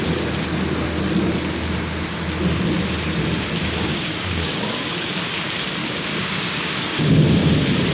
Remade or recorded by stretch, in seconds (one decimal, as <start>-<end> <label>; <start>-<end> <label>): 0.0-3.9 recorded; 3.9-4.6 remade; 4.6-5.8 recorded; 5.8-7.5 remade; 7.5-7.9 recorded